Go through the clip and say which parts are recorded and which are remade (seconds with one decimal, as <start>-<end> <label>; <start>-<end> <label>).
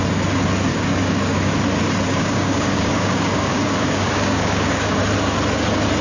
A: 0.0-0.7 recorded; 0.7-1.5 remade; 1.5-2.1 recorded; 2.1-5.0 remade; 5.0-6.0 recorded